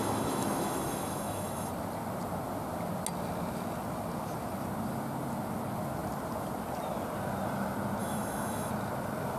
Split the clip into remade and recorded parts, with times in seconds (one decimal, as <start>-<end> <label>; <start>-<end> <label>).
0.0-1.7 remade; 1.7-8.0 recorded; 8.0-8.7 remade; 8.7-9.4 recorded